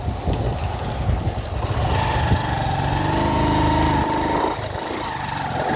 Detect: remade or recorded recorded